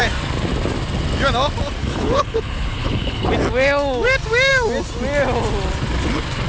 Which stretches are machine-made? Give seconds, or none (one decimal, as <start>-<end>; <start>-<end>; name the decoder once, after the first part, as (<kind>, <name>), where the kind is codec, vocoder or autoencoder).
1.8-3.3 (codec, HILCodec)